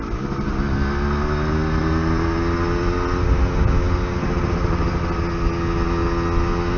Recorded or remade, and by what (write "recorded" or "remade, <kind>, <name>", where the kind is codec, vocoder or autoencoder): recorded